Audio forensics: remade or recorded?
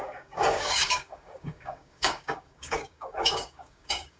remade